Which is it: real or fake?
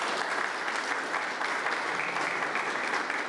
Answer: real